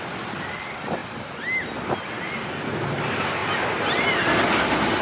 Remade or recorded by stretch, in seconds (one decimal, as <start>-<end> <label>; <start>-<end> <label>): 0.0-5.0 recorded